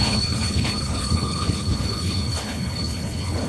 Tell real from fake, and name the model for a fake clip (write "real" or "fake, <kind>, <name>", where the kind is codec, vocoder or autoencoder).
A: fake, codec, HILCodec